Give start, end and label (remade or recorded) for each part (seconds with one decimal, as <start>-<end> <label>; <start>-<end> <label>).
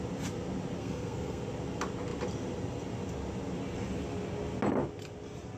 0.0-0.8 recorded; 0.8-1.4 remade; 1.4-5.6 recorded